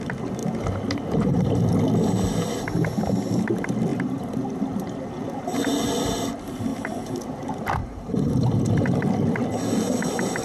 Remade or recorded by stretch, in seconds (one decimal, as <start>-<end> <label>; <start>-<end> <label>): 0.0-3.9 recorded; 3.9-4.5 remade; 4.5-7.8 recorded; 7.8-8.4 remade; 8.4-10.4 recorded